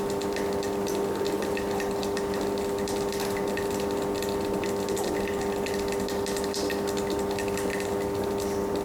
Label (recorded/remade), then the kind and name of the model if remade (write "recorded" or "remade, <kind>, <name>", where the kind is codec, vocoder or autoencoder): recorded